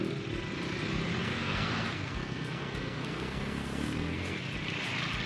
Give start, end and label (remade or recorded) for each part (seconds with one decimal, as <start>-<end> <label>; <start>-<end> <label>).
0.0-1.2 recorded; 1.2-4.4 remade; 4.4-5.3 recorded